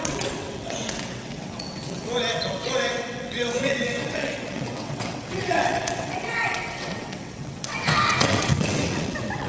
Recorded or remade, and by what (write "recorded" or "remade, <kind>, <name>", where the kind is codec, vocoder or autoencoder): remade, vocoder, WaveNeXt